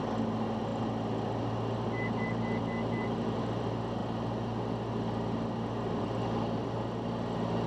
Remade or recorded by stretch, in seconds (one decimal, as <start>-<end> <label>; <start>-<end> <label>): 0.0-7.7 recorded